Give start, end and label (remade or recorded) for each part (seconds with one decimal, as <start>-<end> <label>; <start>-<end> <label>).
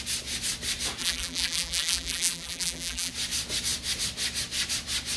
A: 0.0-1.0 recorded; 1.0-3.1 remade; 3.1-5.2 recorded